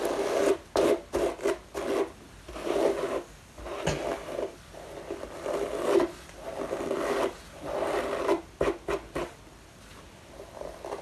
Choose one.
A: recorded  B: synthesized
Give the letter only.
A